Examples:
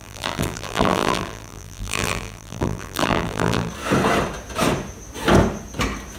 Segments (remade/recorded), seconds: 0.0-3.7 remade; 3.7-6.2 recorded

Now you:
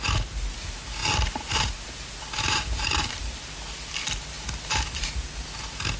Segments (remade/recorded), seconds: 0.0-1.0 recorded; 1.0-4.2 remade; 4.2-6.0 recorded